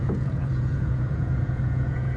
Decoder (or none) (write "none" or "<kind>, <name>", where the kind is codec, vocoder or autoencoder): vocoder, Vocos